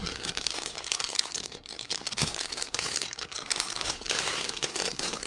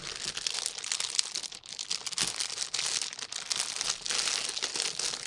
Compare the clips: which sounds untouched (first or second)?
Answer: second